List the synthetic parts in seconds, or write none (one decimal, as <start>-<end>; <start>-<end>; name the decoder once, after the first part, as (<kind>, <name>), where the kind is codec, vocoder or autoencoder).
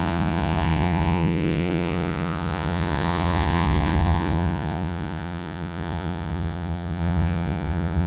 0.0-8.1 (vocoder, Vocos)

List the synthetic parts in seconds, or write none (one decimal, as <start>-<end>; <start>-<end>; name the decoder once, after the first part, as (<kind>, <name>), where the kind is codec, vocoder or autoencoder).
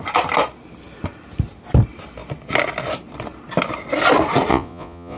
4.5-5.2 (vocoder, Vocos)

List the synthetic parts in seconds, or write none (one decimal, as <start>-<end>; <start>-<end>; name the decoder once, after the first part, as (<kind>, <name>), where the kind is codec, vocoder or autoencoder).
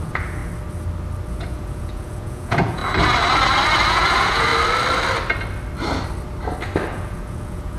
0.0-0.4 (vocoder, Vocos); 1.3-2.8; 3.9-4.5; 6.9-7.8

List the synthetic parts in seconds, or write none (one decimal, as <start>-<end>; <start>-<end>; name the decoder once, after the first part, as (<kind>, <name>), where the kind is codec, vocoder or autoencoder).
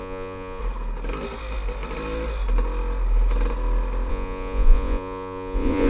0.0-0.6 (vocoder, Vocos); 4.1-5.9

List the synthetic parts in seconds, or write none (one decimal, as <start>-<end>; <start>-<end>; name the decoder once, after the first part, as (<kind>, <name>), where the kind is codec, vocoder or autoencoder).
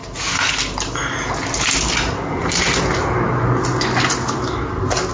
none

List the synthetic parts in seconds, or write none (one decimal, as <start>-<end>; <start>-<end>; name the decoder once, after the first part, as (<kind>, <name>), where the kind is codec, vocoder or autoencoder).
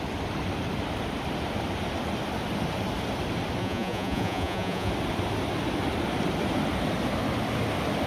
3.6-4.9 (vocoder, Vocos)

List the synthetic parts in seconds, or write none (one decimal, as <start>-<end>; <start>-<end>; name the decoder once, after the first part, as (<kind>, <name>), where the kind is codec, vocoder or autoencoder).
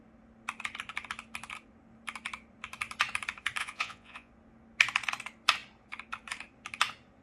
3.6-4.3 (vocoder, Vocos)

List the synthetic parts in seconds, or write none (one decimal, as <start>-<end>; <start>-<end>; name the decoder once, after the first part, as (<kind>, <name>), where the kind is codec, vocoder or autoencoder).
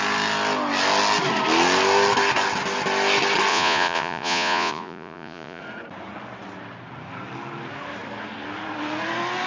3.5-5.6 (vocoder, Vocos)